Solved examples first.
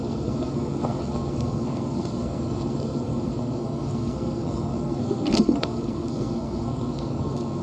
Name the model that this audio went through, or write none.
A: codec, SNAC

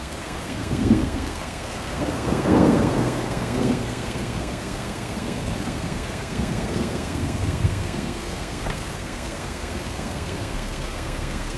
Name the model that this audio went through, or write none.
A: codec, SNAC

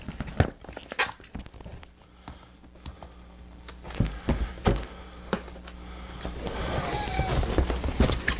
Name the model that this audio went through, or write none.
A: none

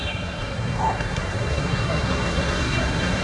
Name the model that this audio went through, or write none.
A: codec, SNAC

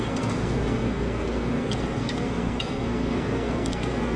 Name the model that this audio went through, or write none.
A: codec, SNAC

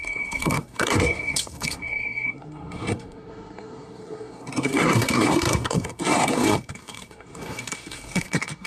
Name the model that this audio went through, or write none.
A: codec, SNAC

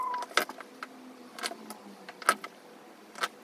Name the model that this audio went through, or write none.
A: none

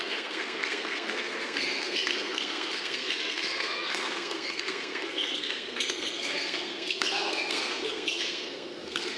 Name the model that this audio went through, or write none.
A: codec, SNAC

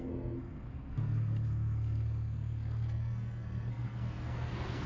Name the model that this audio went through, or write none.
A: codec, SNAC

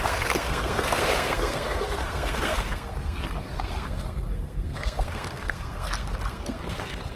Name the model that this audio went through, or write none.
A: codec, SNAC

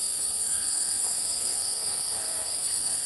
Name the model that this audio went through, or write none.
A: codec, SNAC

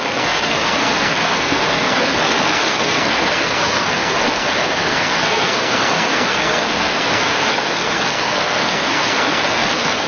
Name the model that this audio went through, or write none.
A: codec, SNAC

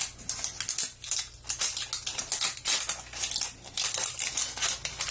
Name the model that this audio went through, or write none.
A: none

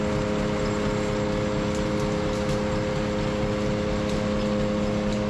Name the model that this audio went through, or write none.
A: none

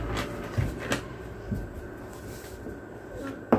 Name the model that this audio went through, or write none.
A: none